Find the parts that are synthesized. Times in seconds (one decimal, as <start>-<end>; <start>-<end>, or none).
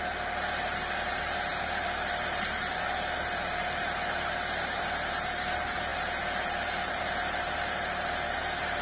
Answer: 0.0-8.8